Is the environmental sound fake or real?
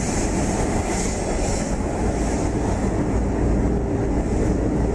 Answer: real